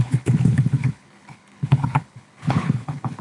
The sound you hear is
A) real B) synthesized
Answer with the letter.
B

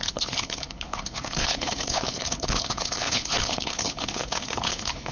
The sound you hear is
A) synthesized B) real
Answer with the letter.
A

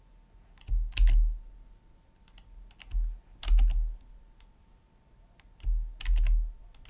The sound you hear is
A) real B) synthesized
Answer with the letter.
A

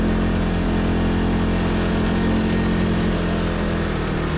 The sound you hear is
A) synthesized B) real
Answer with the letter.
B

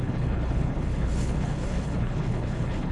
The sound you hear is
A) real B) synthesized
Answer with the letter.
B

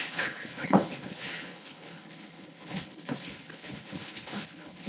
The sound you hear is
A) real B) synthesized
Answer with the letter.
B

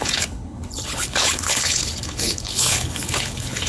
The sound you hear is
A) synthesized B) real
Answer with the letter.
A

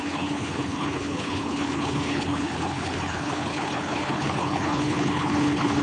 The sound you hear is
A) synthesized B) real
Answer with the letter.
A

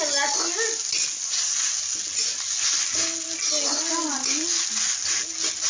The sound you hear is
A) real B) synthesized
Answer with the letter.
A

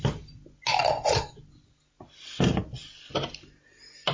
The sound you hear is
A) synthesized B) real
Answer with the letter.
B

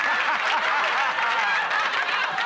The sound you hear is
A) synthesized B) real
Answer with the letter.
B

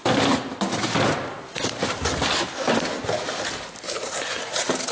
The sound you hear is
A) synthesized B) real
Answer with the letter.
B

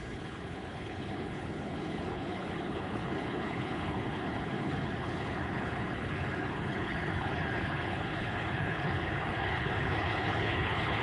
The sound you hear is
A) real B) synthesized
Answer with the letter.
B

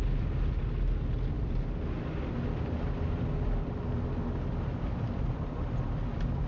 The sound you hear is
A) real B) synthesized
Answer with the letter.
A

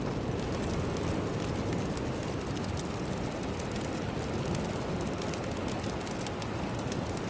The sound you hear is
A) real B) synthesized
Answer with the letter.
A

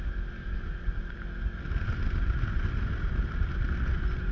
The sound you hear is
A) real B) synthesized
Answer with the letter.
A